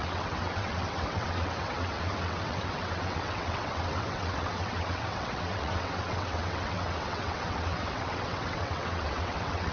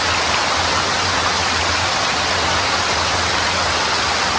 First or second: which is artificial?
first